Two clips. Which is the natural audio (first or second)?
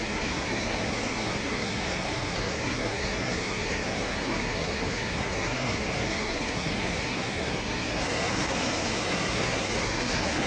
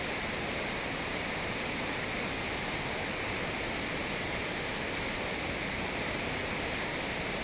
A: second